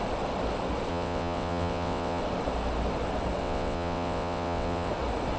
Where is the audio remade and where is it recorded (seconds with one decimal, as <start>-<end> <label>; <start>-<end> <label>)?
0.0-0.9 recorded; 0.9-2.2 remade; 2.2-3.4 recorded; 3.4-4.9 remade; 4.9-5.4 recorded